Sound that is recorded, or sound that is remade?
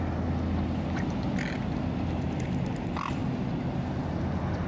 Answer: recorded